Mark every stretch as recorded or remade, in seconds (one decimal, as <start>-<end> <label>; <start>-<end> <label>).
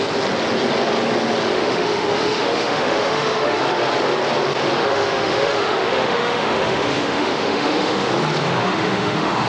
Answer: 0.0-1.5 recorded; 1.5-3.6 remade; 3.6-4.8 recorded; 4.8-8.1 remade; 8.1-8.6 recorded; 8.6-9.5 remade